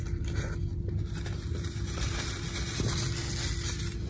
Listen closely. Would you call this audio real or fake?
real